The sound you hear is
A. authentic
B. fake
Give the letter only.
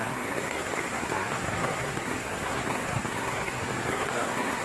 B